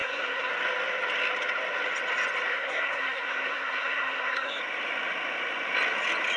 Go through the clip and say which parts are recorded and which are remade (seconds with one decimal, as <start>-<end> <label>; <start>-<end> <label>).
0.0-0.5 remade; 0.5-2.5 recorded; 2.5-4.6 remade; 4.6-6.4 recorded